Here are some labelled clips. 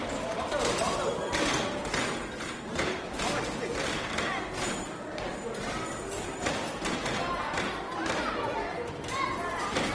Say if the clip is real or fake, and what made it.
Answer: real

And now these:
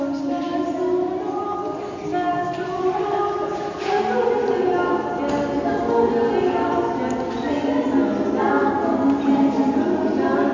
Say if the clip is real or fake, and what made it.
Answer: real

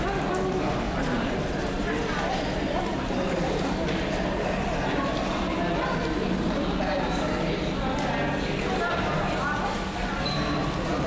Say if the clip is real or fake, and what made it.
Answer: real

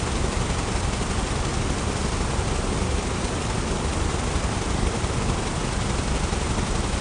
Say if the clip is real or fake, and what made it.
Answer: real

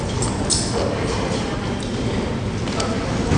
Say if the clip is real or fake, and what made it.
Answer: real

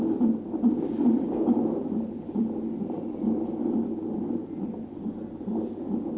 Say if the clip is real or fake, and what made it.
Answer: real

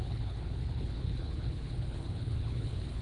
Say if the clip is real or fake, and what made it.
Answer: fake, codec, HILCodec